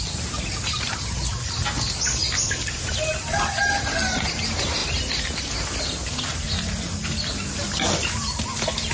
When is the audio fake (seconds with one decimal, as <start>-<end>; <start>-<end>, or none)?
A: none